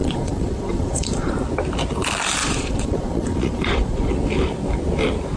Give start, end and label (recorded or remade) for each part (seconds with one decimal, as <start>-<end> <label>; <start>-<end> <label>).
0.0-1.3 remade; 1.3-2.4 recorded; 2.4-4.1 remade; 4.1-5.4 recorded